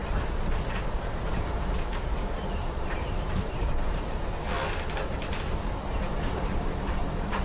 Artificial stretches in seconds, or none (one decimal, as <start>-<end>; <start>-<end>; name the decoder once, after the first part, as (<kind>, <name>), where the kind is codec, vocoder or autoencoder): 0.0-4.3 (vocoder, BigVGAN v2); 5.1-7.4

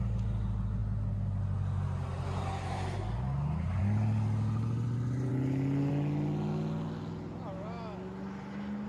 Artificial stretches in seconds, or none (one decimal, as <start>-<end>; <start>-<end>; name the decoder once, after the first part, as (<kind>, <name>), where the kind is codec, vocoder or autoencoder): none

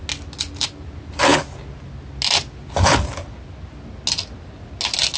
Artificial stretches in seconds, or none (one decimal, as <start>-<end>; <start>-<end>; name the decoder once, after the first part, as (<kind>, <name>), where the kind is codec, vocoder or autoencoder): none

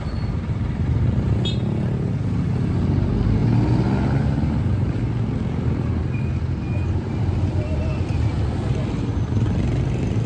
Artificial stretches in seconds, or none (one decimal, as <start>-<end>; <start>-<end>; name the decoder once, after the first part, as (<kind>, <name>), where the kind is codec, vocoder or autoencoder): none

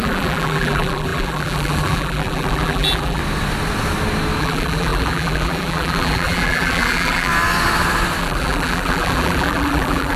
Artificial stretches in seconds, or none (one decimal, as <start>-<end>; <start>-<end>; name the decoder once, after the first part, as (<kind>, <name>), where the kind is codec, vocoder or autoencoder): 0.0-3.2 (vocoder, BigVGAN v2); 4.4-7.3; 8.2-10.2

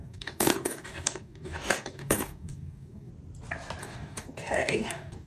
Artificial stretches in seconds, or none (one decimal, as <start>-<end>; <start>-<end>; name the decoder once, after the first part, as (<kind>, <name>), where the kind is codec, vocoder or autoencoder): 0.0-3.1 (codec, DAC); 3.8-5.3

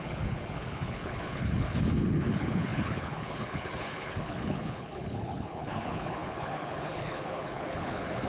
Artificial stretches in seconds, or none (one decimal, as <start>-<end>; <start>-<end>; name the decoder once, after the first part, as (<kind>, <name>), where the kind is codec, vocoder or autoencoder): 0.0-8.3 (codec, HILCodec)